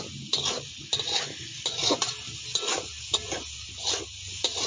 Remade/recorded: recorded